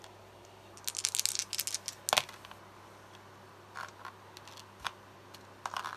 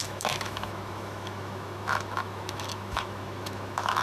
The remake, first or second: second